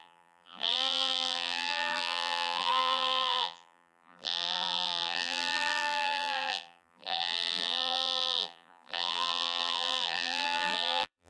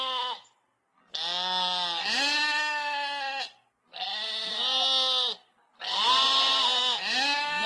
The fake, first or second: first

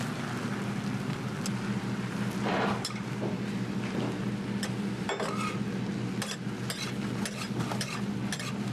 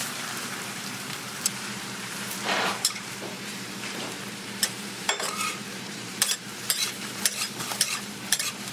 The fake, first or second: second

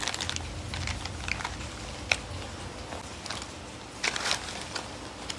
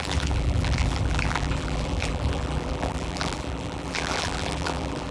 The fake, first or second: second